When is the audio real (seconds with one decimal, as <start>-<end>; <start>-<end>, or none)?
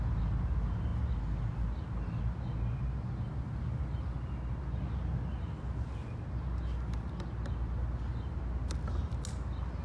0.0-9.8